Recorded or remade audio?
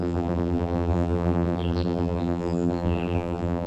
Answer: remade